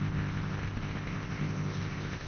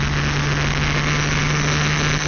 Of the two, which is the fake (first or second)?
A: first